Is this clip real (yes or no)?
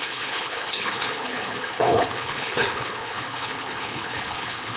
no